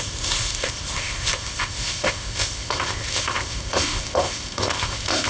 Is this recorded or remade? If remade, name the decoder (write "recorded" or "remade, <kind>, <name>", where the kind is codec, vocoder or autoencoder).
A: remade, codec, ZipCodec